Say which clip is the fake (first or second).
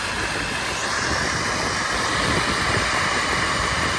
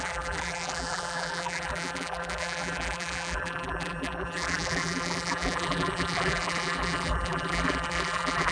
second